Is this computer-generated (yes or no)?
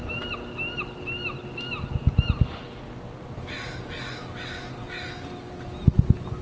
no